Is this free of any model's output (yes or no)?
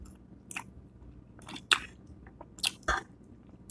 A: yes